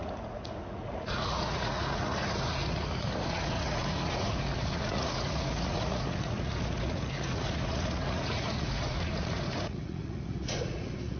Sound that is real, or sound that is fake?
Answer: fake